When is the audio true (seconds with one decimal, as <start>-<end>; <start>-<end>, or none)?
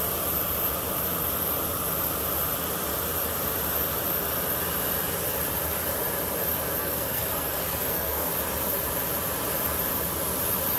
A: 0.0-6.8; 8.3-10.8